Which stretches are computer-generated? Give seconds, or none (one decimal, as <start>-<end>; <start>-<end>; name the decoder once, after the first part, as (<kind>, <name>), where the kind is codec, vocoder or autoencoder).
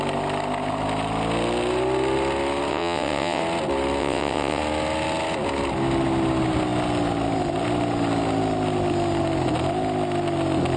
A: 2.7-3.4 (vocoder, WaveNeXt); 4.0-4.6